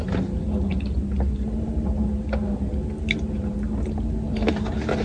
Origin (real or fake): real